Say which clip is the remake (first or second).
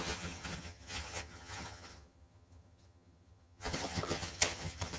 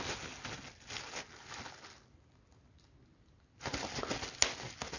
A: first